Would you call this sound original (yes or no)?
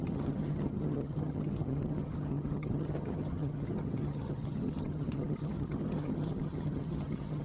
no